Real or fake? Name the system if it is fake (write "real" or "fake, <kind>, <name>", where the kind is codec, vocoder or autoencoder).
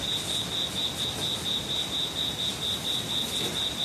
real